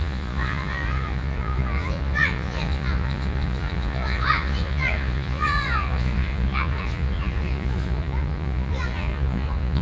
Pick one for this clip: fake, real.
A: fake